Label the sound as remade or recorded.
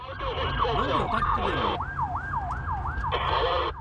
recorded